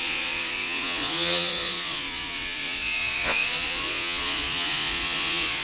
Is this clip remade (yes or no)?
yes